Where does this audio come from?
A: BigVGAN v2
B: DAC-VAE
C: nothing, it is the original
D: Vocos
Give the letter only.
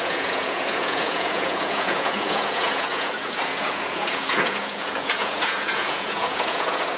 D